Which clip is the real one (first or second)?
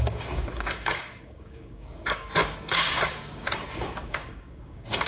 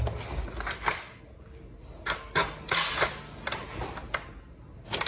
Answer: second